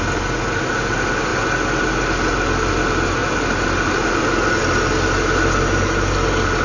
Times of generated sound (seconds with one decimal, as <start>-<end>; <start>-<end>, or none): none